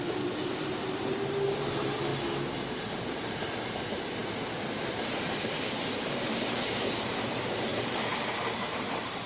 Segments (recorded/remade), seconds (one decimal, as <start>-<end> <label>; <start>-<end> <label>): 0.0-2.1 remade; 2.1-2.9 recorded; 2.9-9.3 remade